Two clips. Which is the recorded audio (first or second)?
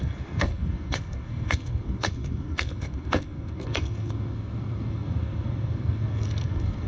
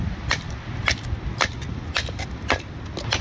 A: second